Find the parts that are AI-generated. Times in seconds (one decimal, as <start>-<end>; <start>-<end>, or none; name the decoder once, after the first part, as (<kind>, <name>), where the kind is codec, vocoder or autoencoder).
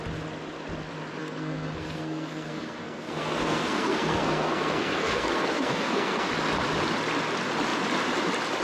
1.2-6.3 (codec, SNAC)